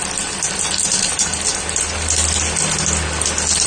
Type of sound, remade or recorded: recorded